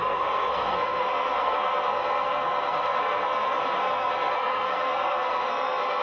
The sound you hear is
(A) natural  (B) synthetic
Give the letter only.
B